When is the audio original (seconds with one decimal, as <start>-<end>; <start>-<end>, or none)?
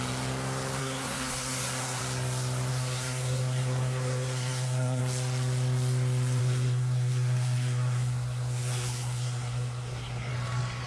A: 0.0-0.8; 2.0-2.7; 5.0-6.4; 10.3-10.9